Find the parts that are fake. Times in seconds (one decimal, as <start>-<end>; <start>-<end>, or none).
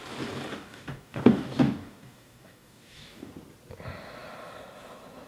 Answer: 0.5-3.3